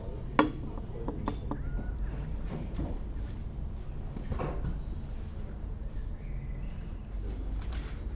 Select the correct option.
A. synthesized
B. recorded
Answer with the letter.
B